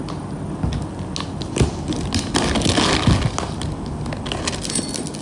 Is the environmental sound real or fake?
real